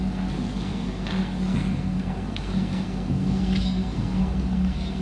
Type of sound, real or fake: fake